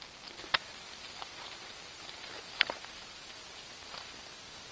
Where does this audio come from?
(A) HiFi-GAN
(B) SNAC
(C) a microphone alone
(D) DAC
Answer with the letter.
C